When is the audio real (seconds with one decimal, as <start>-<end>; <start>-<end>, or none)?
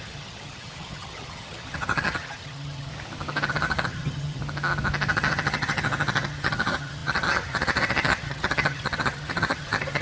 2.9-3.5; 4.4-5.1